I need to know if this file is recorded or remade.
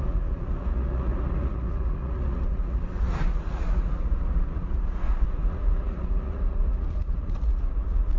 remade